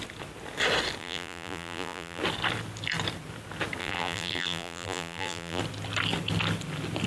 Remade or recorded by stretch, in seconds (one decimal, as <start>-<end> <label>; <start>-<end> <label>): 0.0-1.0 recorded; 1.0-2.2 remade; 2.2-3.8 recorded; 3.8-5.6 remade; 5.6-7.1 recorded